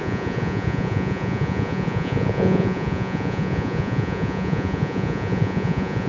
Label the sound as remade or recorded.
remade